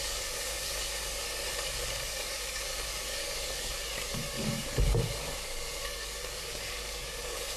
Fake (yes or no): yes